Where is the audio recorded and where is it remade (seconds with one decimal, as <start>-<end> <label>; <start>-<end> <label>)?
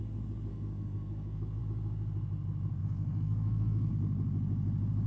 0.0-0.5 recorded; 0.5-1.6 remade; 1.6-2.8 recorded; 2.8-3.9 remade; 3.9-5.1 recorded